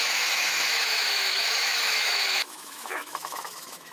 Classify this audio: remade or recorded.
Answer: remade